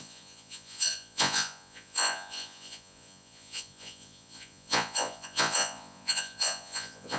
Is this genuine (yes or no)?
no